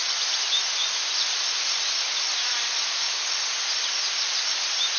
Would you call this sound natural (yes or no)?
yes